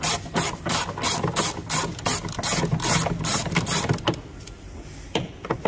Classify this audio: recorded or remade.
recorded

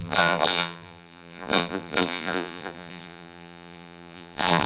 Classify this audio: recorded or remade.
remade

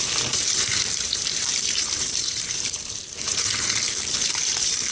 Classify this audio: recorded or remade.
remade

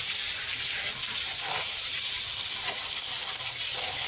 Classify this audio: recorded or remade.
recorded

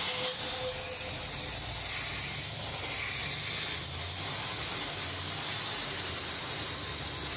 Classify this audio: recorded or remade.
recorded